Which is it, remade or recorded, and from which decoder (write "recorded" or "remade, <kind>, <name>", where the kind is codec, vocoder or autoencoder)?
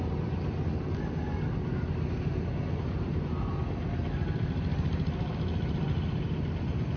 recorded